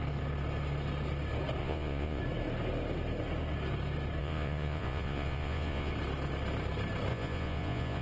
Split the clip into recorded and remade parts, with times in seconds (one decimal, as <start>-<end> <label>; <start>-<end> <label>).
0.0-1.6 recorded; 1.6-2.2 remade; 2.2-4.2 recorded; 4.2-5.9 remade; 5.9-7.1 recorded; 7.1-8.0 remade